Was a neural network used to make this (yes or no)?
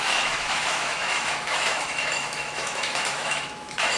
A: yes